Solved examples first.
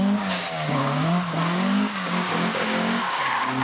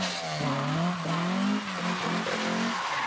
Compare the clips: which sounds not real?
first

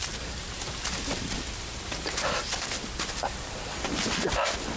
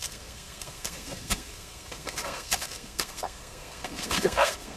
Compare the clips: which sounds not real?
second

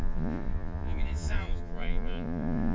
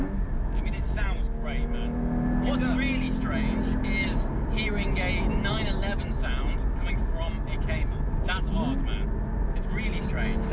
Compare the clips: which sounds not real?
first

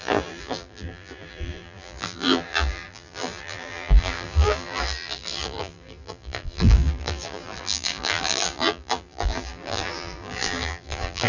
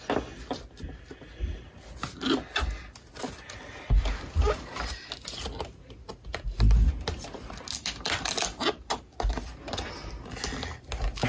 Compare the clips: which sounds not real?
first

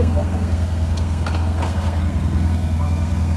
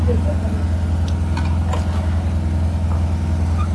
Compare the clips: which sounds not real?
first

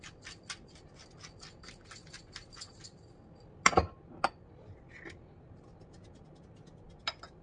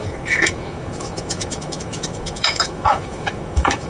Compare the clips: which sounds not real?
second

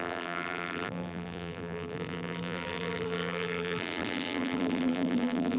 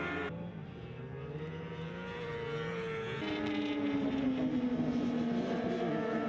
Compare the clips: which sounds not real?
first